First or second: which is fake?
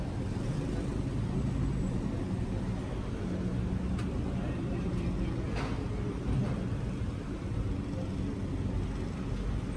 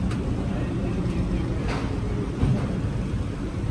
second